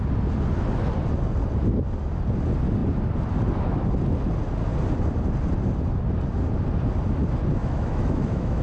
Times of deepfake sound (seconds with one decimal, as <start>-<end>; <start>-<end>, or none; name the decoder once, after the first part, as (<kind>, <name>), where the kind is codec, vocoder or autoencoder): 7.6-8.6 (autoencoder, DAC-VAE)